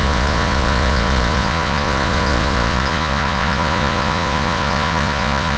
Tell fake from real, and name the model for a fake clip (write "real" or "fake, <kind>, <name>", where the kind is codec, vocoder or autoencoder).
fake, vocoder, Vocos